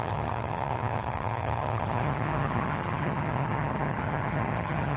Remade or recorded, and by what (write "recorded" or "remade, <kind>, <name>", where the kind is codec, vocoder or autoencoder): remade, vocoder, HiFi-GAN